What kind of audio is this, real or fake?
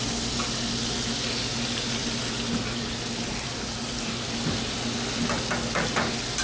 real